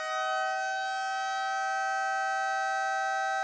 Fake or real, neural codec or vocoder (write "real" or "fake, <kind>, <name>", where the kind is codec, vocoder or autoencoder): real